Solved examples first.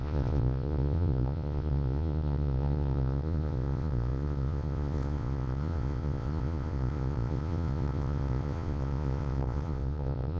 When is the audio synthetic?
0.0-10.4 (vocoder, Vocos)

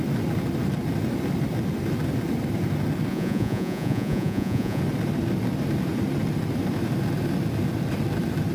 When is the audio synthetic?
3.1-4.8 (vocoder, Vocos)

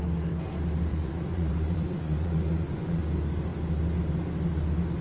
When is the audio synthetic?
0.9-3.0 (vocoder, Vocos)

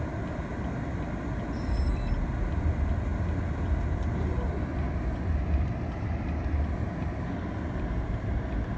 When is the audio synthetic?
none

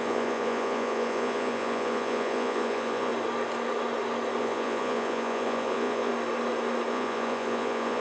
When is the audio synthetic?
0.0-3.1 (vocoder, Vocos); 4.4-6.1; 6.9-8.0

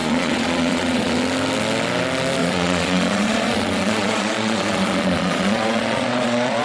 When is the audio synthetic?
0.0-1.1 (vocoder, Vocos); 2.4-6.6